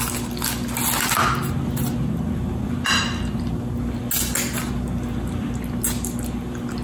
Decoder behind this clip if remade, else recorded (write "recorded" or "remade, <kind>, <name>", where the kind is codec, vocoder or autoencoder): recorded